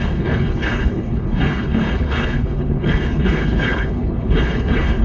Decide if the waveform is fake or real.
fake